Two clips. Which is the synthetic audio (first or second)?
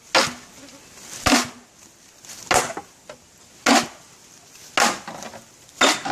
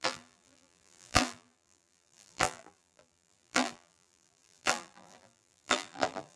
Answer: second